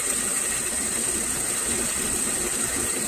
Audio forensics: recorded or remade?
recorded